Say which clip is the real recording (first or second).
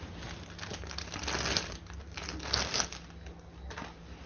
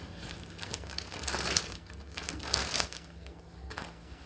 first